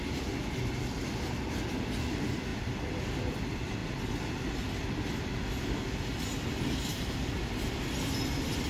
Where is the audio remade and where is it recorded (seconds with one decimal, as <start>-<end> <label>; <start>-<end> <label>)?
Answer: 0.0-8.7 recorded